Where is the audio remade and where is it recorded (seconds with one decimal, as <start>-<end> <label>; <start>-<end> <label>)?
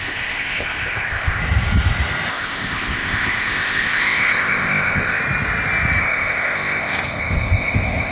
0.0-1.4 remade; 1.4-2.3 recorded; 2.3-5.2 remade; 5.2-6.0 recorded; 6.0-8.1 remade